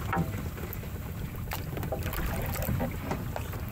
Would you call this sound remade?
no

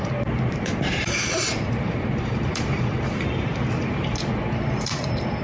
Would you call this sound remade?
yes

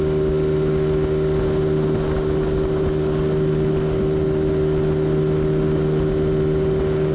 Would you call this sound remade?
no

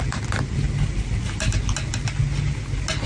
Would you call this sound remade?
no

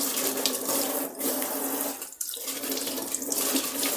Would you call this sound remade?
yes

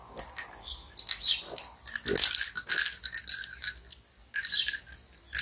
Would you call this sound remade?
no